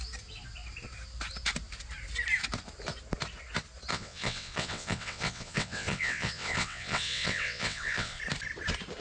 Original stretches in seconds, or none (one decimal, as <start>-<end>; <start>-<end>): 0.0-3.9; 8.2-9.0